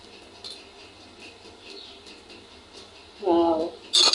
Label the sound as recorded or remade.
recorded